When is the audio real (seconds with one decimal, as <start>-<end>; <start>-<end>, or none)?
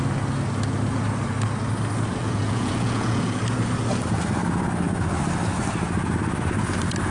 0.0-2.2; 3.4-7.1